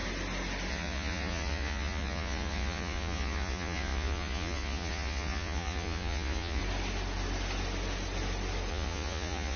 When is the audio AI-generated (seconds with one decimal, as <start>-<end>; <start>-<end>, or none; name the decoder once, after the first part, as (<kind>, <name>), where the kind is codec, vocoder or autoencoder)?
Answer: 0.7-6.6 (vocoder, Vocos); 8.7-9.6